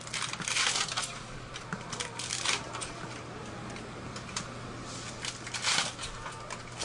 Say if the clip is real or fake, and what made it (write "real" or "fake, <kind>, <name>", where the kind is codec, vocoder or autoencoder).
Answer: real